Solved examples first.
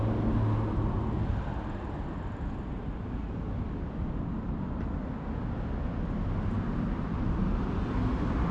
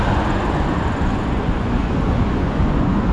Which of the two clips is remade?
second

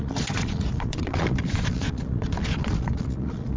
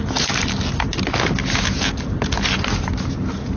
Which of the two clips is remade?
first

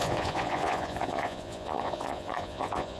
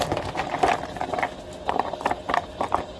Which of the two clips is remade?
first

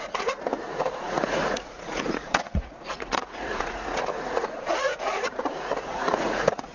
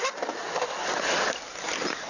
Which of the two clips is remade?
first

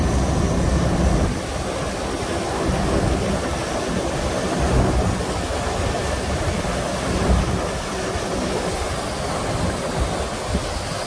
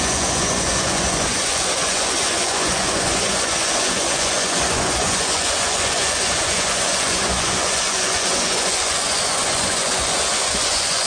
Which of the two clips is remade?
second